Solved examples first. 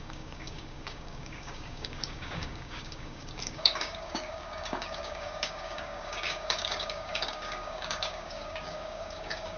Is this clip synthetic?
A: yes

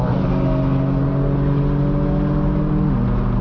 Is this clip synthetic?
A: no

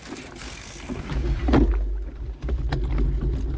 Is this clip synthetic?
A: no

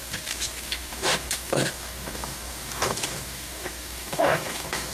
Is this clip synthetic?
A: yes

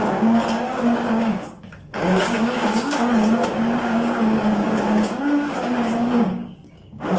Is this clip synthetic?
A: yes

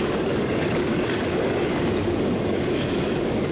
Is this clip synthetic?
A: yes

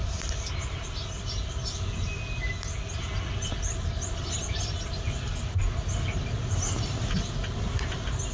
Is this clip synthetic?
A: no